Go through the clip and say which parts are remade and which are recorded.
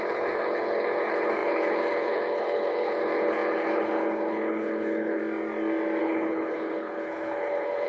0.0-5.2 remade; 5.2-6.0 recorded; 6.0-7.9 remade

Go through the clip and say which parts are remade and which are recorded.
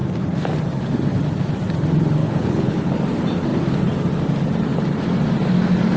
0.0-2.2 recorded; 2.2-3.0 remade; 3.0-6.0 recorded